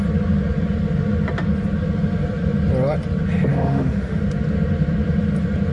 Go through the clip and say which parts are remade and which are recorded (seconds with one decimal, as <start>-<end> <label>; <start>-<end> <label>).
0.0-3.5 recorded; 3.5-4.2 remade; 4.2-5.7 recorded